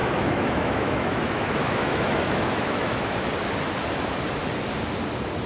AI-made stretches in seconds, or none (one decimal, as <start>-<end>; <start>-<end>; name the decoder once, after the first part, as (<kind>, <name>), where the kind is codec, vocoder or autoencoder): 0.0-3.3 (autoencoder, DAC-VAE)